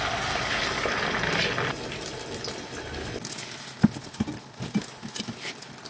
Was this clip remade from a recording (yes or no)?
no